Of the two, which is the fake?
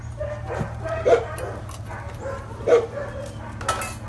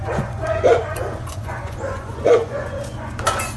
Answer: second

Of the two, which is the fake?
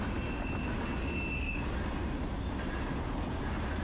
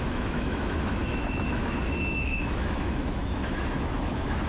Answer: second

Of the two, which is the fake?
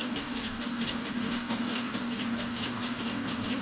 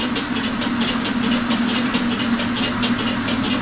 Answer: first